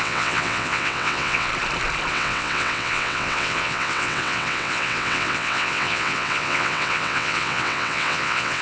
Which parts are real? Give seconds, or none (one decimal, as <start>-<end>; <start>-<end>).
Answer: 1.5-2.1